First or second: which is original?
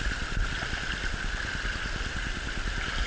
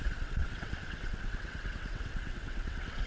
first